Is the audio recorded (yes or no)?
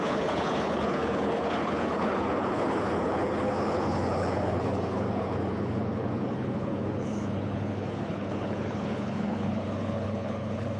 no